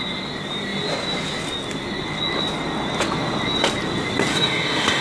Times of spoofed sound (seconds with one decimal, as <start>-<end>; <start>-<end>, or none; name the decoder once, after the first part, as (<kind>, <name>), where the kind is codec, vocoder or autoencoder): 4.3-5.0 (autoencoder, DAC-VAE)

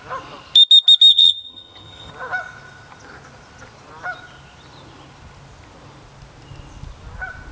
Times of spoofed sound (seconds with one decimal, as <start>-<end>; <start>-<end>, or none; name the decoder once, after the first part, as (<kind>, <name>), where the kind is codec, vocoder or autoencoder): 1.1-2.1 (vocoder, HiFi-GAN)